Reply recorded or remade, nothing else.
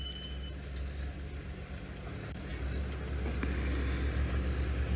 recorded